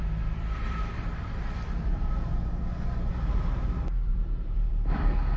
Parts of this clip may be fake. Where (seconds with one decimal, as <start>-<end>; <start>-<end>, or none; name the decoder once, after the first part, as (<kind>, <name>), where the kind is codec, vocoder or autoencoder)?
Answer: 0.0-3.1 (vocoder, BigVGAN v2); 4.1-5.4